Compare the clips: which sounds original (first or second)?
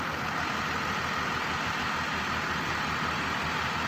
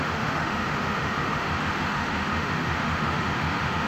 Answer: first